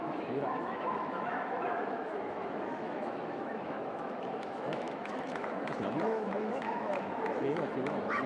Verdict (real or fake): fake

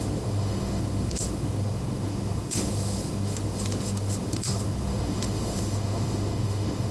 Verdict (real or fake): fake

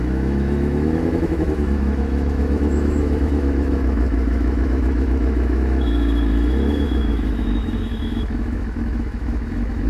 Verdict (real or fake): fake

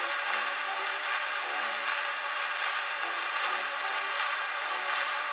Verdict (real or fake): real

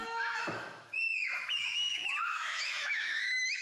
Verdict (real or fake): fake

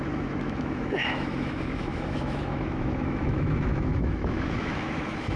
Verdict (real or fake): fake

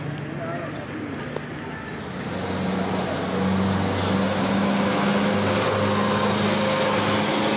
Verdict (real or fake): real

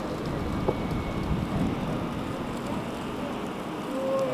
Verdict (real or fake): real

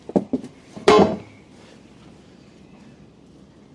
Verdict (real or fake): real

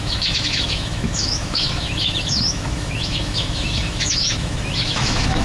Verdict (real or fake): fake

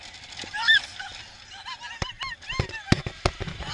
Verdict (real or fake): real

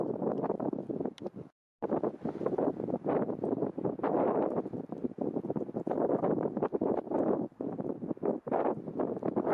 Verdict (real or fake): real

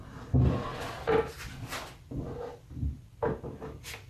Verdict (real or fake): real